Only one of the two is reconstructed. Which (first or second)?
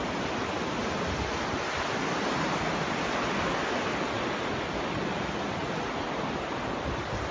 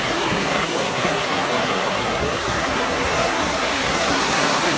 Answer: second